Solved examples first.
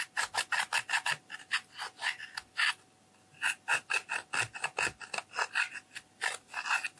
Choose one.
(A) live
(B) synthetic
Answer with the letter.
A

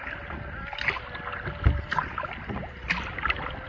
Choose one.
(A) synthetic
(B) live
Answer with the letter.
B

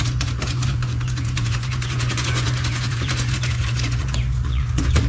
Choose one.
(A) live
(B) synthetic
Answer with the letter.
B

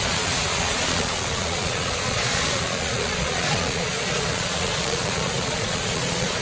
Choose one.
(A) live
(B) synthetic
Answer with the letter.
B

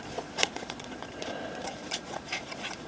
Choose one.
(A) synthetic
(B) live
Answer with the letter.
A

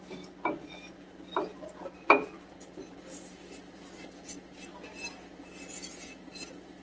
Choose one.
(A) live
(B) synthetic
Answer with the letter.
A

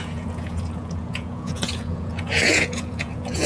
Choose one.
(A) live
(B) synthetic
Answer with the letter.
B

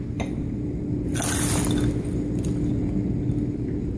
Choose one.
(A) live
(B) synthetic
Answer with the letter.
A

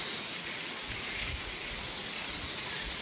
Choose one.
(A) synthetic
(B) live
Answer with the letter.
A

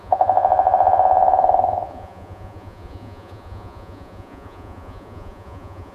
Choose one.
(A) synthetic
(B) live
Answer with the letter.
A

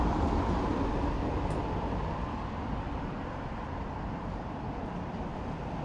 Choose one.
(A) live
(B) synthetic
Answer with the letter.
A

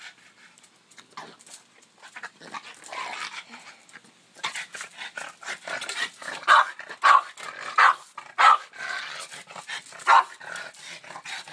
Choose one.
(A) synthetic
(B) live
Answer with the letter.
B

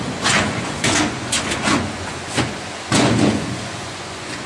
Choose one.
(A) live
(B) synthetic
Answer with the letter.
B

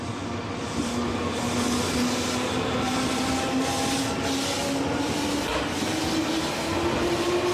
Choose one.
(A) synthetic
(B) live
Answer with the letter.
B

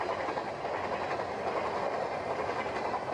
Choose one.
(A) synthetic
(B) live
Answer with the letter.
B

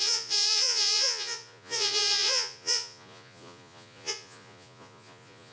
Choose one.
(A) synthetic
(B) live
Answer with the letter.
A